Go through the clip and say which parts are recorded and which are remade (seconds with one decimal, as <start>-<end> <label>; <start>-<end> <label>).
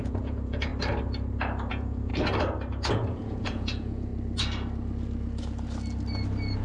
0.0-0.7 remade; 0.7-1.7 recorded; 1.7-2.1 remade; 2.1-2.9 recorded; 2.9-4.1 remade; 4.1-6.6 recorded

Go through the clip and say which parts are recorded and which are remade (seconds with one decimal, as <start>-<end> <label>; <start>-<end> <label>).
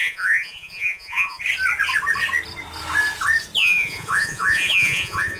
0.0-1.4 remade; 1.4-3.6 recorded; 3.6-5.4 remade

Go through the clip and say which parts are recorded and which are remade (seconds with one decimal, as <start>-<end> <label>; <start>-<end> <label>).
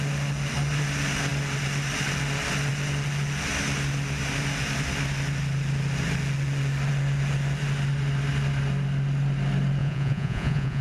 0.0-9.8 recorded; 9.8-10.8 remade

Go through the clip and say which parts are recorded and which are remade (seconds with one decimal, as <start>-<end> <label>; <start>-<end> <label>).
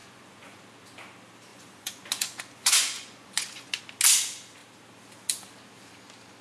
0.0-0.6 remade; 0.6-1.5 recorded; 1.5-3.8 remade; 3.8-6.4 recorded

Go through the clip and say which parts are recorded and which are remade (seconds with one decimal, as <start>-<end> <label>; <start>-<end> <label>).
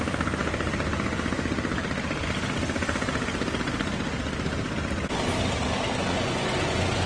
0.0-6.0 recorded; 6.0-7.1 remade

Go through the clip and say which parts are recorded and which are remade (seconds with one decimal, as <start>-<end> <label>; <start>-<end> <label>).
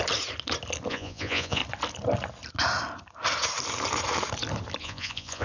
0.0-0.9 recorded; 0.9-1.6 remade; 1.6-4.8 recorded; 4.8-5.4 remade